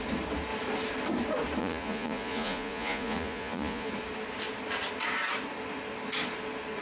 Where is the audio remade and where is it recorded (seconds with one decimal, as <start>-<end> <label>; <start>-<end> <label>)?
0.0-1.6 recorded; 1.6-3.9 remade; 3.9-6.8 recorded